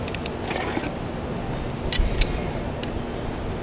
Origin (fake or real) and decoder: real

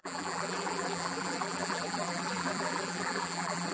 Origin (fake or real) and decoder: fake, vocoder, BigVGAN v2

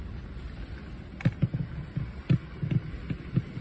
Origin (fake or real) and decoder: real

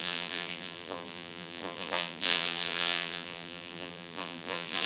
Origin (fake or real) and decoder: fake, vocoder, BigVGAN v2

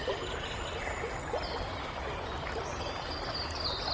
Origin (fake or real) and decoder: real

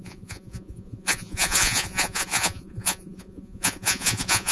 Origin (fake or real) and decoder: fake, vocoder, Vocos